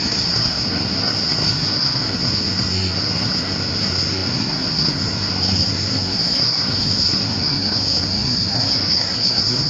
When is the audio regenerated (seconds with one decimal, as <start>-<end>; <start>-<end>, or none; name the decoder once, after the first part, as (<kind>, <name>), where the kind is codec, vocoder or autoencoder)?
0.0-9.7 (codec, SNAC)